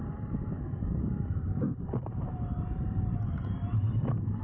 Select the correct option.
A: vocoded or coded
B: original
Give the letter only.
A